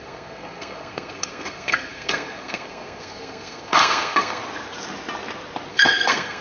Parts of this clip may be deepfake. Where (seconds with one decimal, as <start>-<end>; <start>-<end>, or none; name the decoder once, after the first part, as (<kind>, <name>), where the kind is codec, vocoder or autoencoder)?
0.0-4.4 (codec, SNAC); 5.7-6.4